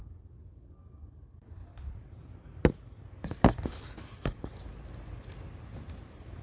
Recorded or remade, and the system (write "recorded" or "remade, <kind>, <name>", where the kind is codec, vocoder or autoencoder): recorded